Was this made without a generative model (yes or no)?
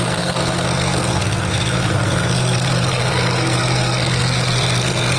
no